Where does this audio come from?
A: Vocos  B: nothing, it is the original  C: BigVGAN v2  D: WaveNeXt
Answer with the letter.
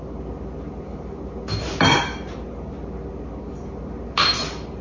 B